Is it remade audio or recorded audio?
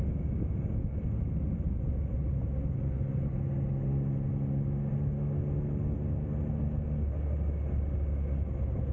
recorded